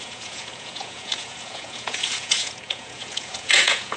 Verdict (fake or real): fake